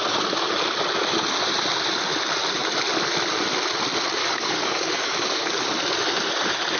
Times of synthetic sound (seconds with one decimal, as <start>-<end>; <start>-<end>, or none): 4.2-5.6